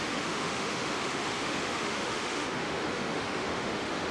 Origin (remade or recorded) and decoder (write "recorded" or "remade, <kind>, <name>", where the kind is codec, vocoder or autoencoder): remade, autoencoder, DAC-VAE